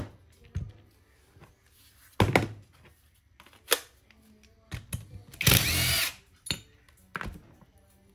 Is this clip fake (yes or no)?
no